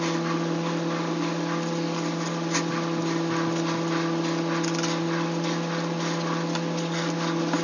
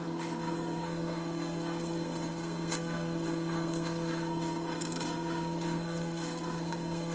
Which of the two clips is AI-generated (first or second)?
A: second